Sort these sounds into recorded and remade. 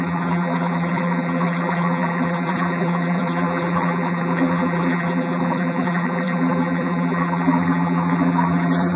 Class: remade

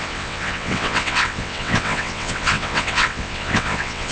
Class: remade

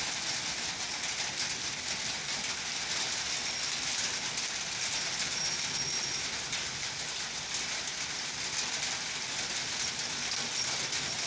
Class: recorded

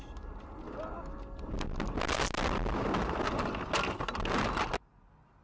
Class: recorded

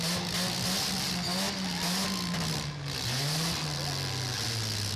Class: recorded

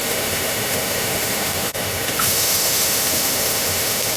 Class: remade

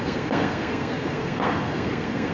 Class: remade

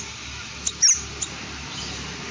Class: recorded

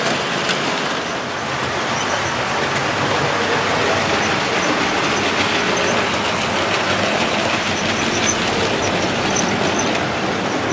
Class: recorded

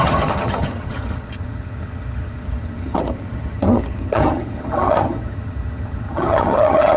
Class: remade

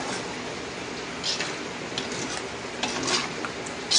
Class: recorded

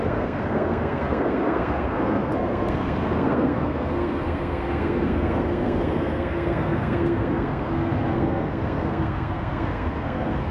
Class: remade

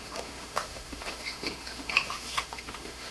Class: remade